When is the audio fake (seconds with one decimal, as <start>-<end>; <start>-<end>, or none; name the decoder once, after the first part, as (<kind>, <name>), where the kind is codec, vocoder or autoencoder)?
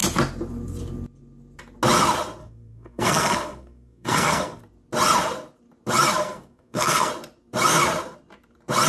2.4-4.6 (codec, SNAC); 6.2-7.1